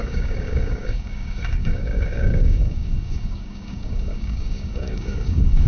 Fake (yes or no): yes